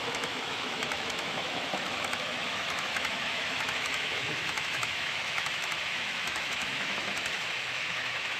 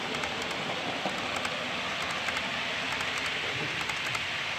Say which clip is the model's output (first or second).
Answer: first